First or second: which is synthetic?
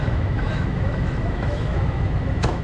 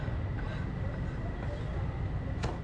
first